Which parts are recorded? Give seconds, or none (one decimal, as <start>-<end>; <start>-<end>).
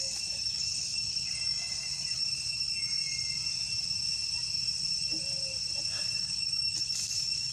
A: 3.0-6.2